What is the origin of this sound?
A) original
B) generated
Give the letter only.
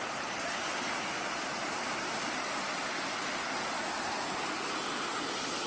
A